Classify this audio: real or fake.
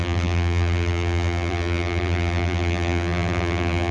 fake